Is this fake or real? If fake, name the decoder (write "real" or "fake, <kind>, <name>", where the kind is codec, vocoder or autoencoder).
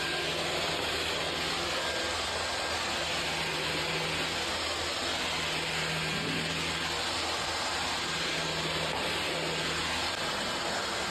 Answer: real